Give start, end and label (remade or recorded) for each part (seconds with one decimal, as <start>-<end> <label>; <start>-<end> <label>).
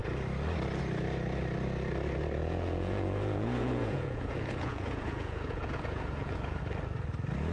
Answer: 0.0-2.4 recorded; 2.4-6.6 remade; 6.6-7.5 recorded